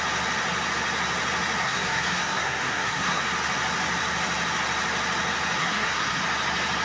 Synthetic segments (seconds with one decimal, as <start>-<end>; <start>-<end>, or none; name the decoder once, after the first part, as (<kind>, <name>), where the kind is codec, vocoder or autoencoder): 1.6-3.2 (codec, SNAC); 5.6-6.2